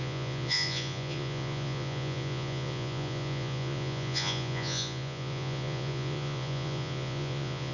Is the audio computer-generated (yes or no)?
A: yes